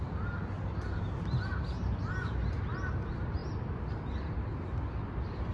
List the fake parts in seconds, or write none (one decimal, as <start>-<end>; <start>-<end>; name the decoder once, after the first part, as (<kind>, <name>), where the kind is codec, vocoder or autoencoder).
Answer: none